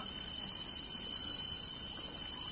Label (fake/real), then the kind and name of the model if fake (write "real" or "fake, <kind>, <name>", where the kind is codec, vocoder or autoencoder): real